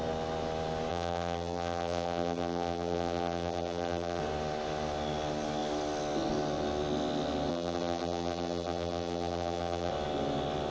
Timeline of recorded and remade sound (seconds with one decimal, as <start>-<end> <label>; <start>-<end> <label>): 0.0-0.9 recorded; 0.9-4.2 remade; 4.2-7.5 recorded; 7.5-9.9 remade; 9.9-10.7 recorded